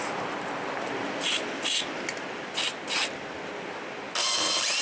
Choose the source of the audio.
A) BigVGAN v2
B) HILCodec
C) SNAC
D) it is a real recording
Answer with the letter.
D